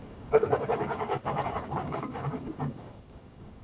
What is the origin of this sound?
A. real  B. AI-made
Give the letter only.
B